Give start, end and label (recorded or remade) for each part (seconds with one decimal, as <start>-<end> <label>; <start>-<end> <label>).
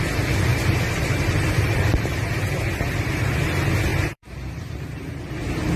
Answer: 0.0-0.5 recorded; 0.5-1.7 remade; 1.7-3.9 recorded; 3.9-5.3 remade; 5.3-5.8 recorded